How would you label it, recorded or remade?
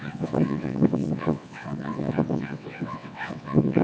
remade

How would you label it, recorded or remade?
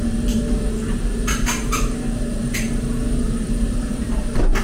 remade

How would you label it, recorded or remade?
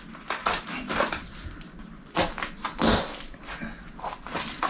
recorded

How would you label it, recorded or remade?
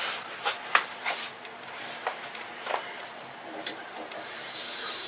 remade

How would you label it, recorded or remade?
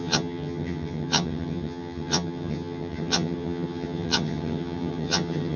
remade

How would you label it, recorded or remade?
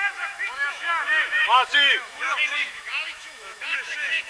remade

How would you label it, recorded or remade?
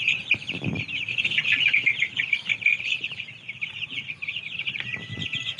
remade